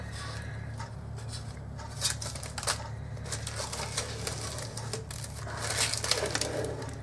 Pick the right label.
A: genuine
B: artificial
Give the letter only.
A